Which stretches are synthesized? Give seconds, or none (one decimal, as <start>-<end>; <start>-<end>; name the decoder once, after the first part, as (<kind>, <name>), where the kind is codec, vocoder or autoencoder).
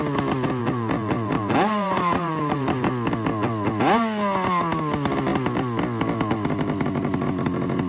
0.6-2.9 (vocoder, BigVGAN v2)